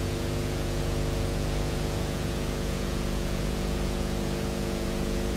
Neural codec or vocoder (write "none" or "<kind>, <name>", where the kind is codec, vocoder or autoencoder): vocoder, Vocos